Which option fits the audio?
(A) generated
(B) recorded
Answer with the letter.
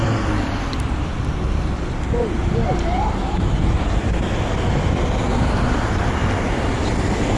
A